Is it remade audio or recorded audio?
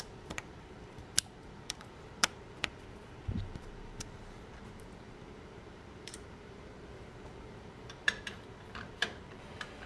remade